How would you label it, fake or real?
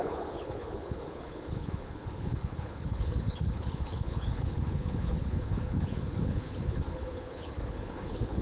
fake